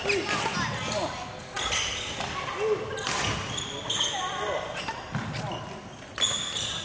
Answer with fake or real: real